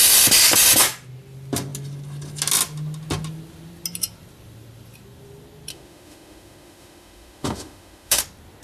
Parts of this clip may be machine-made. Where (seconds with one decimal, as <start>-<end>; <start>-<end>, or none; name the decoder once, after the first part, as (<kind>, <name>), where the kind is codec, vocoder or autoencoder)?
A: 5.7-8.2 (autoencoder, DAC-VAE)